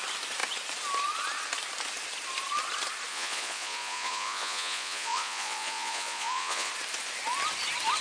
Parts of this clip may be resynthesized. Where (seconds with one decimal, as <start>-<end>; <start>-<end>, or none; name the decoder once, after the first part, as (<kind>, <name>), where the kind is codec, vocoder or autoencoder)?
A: 3.1-6.7 (vocoder, Vocos)